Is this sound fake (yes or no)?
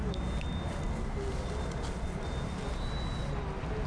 no